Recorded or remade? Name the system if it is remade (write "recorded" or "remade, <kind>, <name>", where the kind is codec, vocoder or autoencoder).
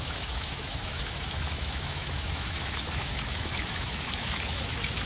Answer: remade, autoencoder, DAC-VAE